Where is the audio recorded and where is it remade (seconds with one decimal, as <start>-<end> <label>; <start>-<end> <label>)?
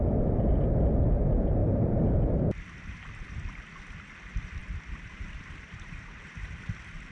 0.0-1.6 recorded; 1.6-2.4 remade; 2.4-4.6 recorded; 4.6-6.3 remade; 6.3-7.1 recorded